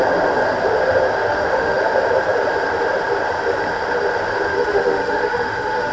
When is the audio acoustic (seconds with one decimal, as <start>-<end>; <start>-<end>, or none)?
0.0-1.3; 1.8-4.5